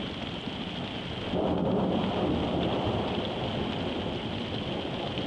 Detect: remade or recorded recorded